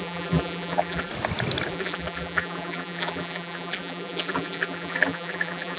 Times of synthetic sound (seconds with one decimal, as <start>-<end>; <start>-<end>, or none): 0.0-1.1; 1.7-5.8